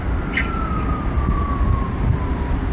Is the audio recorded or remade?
recorded